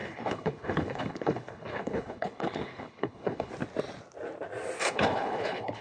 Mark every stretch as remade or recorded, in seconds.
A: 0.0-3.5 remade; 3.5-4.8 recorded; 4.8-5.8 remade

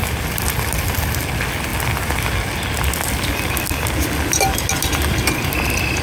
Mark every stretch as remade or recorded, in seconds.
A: 0.0-6.0 recorded

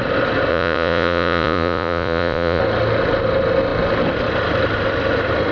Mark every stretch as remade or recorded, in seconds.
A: 0.0-0.5 recorded; 0.5-2.6 remade; 2.6-5.5 recorded